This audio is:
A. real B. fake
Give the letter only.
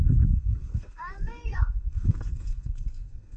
B